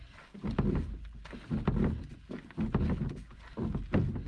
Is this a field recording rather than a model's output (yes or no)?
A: yes